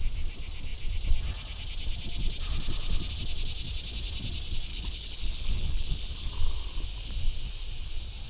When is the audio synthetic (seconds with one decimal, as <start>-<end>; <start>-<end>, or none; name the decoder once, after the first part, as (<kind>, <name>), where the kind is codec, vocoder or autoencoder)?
4.7-6.3 (codec, HILCodec)